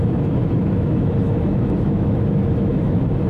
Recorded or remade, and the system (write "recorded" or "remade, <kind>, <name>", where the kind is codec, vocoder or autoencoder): remade, autoencoder, DAC-VAE